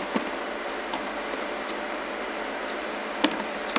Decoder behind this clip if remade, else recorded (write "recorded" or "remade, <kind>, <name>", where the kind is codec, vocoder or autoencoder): remade, vocoder, BigVGAN v2